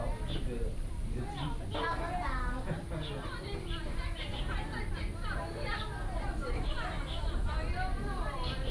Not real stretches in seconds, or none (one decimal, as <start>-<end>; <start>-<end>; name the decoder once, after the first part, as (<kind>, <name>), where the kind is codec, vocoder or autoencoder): 4.3-5.8 (vocoder, BigVGAN v2)